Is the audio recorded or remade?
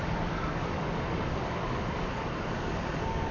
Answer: remade